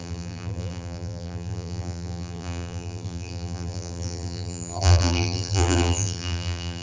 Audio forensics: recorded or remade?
remade